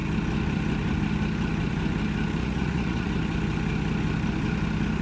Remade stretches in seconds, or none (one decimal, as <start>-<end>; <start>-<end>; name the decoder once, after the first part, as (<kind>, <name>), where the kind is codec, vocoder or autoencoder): 2.4-3.1 (vocoder, Vocos)